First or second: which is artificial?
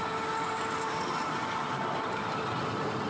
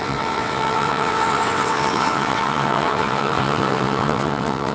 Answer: second